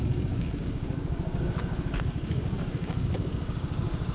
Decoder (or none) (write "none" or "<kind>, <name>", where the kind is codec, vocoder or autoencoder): codec, DAC